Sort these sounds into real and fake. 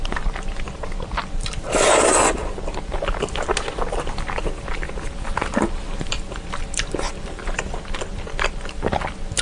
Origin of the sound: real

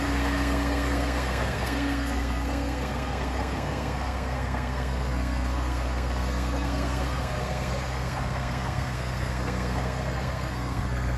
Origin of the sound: fake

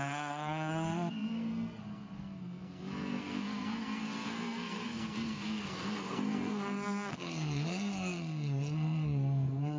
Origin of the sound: fake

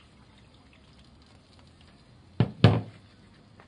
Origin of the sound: real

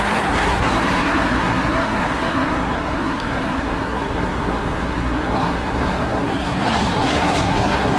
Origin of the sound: fake